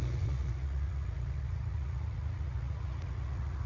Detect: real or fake fake